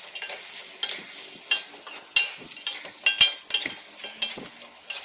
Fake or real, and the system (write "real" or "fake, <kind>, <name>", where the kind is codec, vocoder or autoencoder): real